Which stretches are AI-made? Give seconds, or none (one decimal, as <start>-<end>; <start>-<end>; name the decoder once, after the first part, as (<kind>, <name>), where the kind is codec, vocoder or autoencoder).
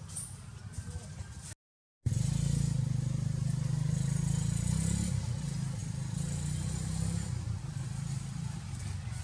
none